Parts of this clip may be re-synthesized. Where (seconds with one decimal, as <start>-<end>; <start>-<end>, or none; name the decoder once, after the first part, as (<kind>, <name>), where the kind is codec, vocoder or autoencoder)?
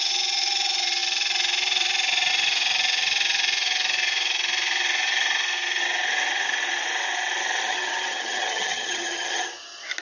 7.7-9.5 (vocoder, HiFi-GAN)